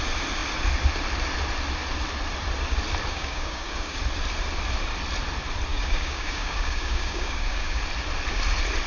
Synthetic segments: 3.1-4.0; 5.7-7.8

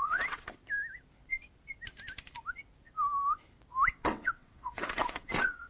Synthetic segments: 0.0-0.6; 3.9-5.7

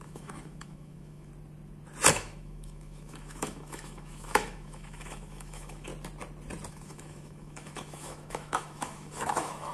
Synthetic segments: 0.0-1.3; 2.1-5.9; 6.7-9.7

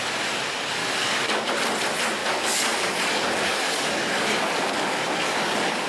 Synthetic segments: 0.8-1.5; 2.2-5.9

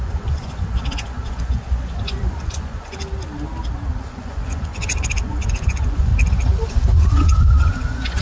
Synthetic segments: 0.0-3.0; 4.1-6.1; 6.7-8.2